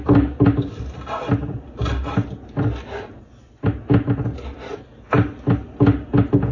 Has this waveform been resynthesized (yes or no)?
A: no